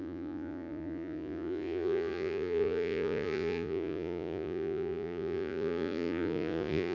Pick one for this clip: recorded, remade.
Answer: remade